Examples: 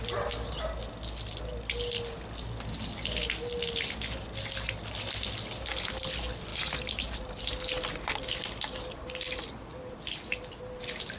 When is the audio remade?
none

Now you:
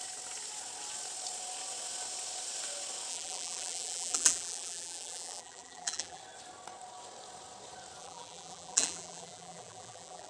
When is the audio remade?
3.1-6.2 (vocoder, BigVGAN v2); 8.0-10.3

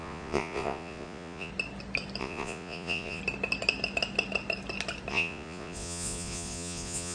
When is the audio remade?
0.0-1.5 (vocoder, Vocos); 2.2-3.2; 5.1-7.1